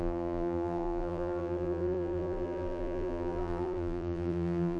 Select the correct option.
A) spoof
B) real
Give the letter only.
A